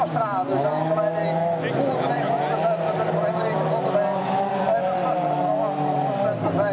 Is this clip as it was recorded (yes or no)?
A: yes